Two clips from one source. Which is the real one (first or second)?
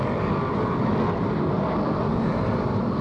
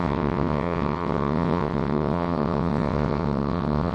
first